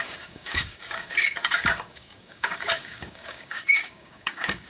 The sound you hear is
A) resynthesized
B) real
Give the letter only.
A